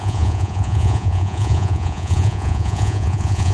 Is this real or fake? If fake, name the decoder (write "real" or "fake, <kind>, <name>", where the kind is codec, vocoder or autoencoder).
fake, vocoder, Vocos